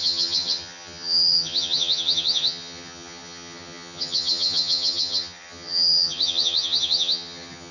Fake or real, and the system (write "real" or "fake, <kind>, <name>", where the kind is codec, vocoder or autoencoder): fake, vocoder, HiFi-GAN